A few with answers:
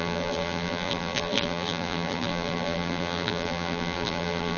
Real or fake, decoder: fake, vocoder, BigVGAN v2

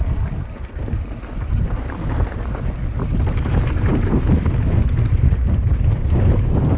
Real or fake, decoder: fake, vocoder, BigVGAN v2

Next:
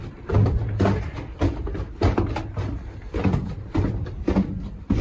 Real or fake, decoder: fake, vocoder, BigVGAN v2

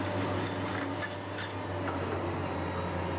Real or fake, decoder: real